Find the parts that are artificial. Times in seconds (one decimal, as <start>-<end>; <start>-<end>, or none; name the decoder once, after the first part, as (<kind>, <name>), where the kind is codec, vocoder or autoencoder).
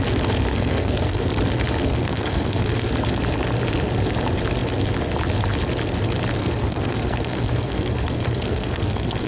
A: 0.5-1.3 (codec, SNAC); 1.8-2.9; 6.4-9.3